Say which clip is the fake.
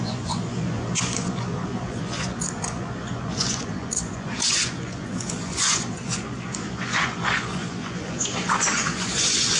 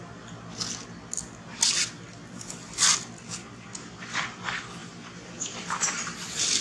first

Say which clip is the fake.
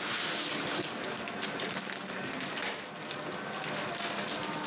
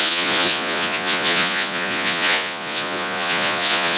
second